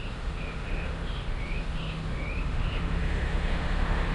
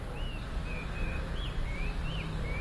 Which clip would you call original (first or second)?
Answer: second